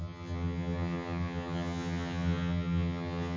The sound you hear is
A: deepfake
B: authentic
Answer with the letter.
A